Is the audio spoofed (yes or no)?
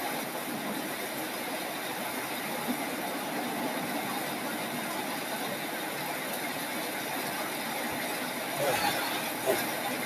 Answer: no